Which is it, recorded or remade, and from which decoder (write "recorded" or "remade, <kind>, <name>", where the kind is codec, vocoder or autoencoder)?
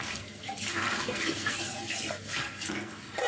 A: remade, codec, SNAC